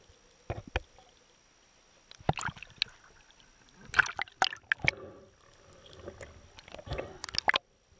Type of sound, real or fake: real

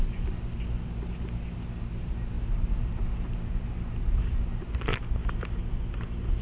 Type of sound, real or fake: real